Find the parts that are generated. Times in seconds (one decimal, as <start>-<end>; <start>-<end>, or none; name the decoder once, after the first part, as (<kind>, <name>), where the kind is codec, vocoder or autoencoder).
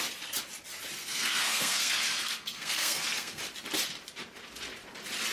1.0-3.4 (codec, SNAC)